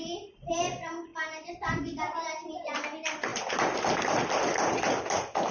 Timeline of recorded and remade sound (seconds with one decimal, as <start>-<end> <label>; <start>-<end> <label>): 0.0-5.5 recorded